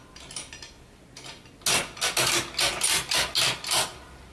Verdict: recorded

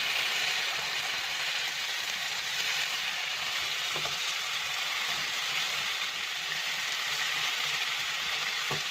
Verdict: remade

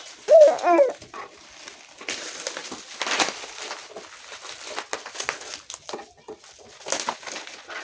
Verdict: recorded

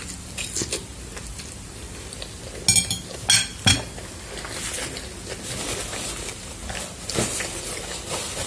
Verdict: recorded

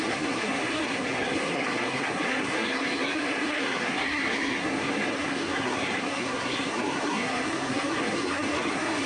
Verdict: remade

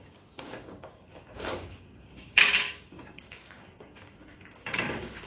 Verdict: remade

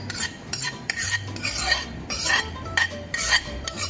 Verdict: remade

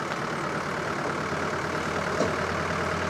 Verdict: recorded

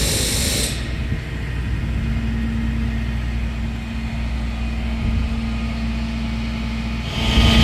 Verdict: recorded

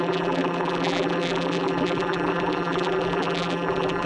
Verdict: remade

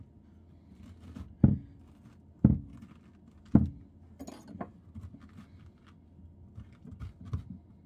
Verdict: recorded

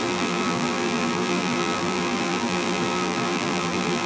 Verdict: remade